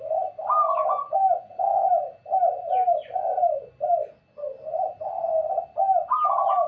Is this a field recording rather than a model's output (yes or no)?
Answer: yes